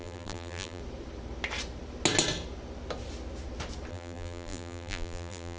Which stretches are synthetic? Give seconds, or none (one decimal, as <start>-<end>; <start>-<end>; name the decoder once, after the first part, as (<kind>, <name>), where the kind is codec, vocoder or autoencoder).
0.0-0.8 (vocoder, BigVGAN v2); 3.9-5.6